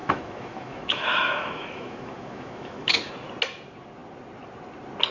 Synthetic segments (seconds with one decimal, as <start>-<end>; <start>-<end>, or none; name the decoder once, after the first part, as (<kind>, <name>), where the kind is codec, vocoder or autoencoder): 0.0-3.1 (autoencoder, DAC-VAE)